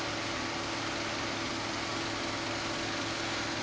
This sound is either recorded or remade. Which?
recorded